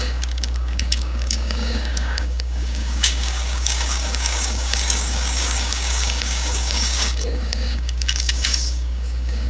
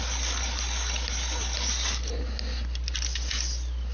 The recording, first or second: second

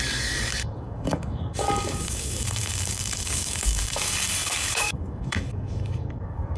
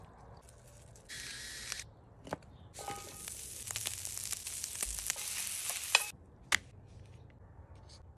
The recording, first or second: second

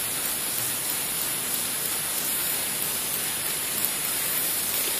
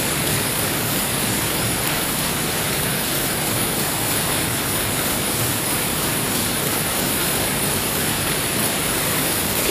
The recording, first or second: first